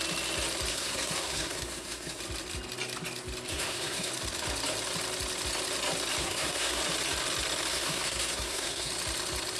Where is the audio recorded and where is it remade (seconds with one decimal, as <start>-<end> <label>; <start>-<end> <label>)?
0.0-0.7 recorded; 0.7-2.2 remade; 2.2-3.5 recorded; 3.5-4.1 remade; 4.1-6.2 recorded; 6.2-6.8 remade; 6.8-7.7 recorded; 7.7-8.9 remade; 8.9-9.6 recorded